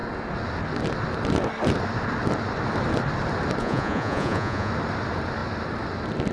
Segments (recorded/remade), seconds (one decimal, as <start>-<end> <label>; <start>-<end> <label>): 0.0-3.6 recorded; 3.6-4.7 remade; 4.7-6.3 recorded

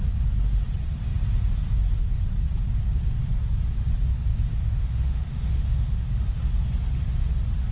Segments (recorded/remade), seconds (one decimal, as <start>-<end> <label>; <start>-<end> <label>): 0.0-4.3 recorded; 4.3-6.4 remade; 6.4-7.7 recorded

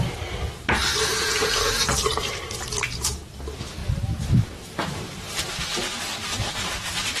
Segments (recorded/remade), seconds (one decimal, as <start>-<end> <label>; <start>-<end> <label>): 0.0-0.8 recorded; 0.8-3.2 remade; 3.2-3.8 recorded; 3.8-5.6 remade; 5.6-6.3 recorded; 6.3-7.2 remade

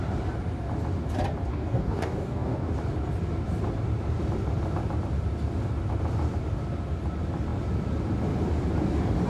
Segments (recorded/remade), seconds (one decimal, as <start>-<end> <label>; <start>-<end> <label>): 0.0-1.5 recorded; 1.5-2.7 remade; 2.7-9.3 recorded

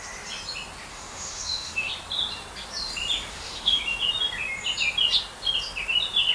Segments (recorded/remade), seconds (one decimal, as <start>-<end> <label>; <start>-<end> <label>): 0.0-0.9 recorded; 0.9-1.9 remade; 1.9-3.3 recorded; 3.3-3.8 remade; 3.8-6.3 recorded